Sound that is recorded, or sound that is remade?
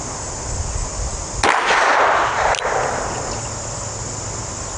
recorded